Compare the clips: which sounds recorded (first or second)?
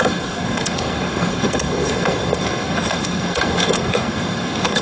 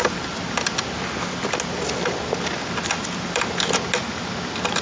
second